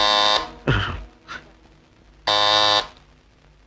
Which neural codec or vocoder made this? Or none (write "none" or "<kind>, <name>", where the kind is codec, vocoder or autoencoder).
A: none